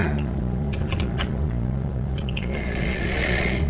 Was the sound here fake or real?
fake